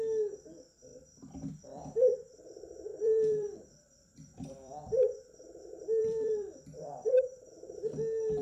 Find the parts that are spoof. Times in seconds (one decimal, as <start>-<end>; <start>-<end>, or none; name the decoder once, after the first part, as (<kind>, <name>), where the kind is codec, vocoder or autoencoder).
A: 0.9-2.4 (vocoder, BigVGAN v2); 2.9-5.6; 6.0-7.5